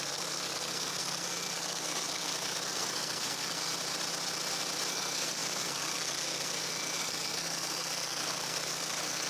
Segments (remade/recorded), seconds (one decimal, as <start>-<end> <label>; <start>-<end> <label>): 0.0-3.7 remade; 3.7-4.9 recorded; 4.9-9.3 remade